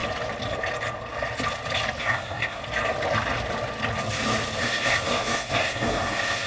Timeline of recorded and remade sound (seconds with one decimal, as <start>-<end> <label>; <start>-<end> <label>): 0.0-2.0 recorded; 2.0-2.6 remade; 2.6-4.6 recorded; 4.6-6.5 remade